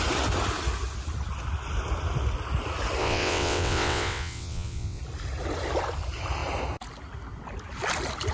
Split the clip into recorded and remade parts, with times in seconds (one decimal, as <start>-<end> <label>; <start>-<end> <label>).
0.0-3.0 recorded; 3.0-5.0 remade; 5.0-8.3 recorded